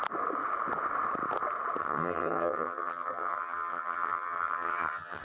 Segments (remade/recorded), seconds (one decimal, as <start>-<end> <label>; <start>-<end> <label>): 0.0-1.8 recorded; 1.8-5.2 remade